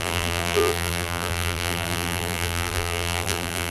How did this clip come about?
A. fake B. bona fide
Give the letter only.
A